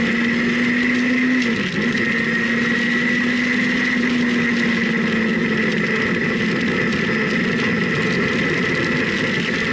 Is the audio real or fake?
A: real